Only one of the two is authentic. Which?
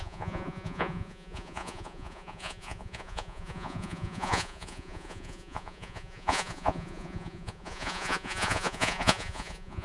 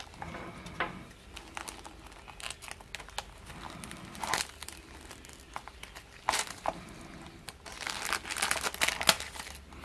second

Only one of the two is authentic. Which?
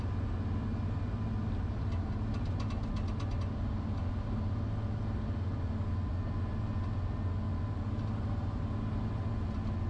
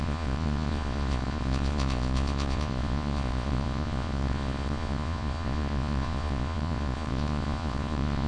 first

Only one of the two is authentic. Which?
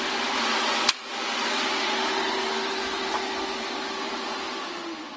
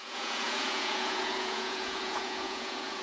first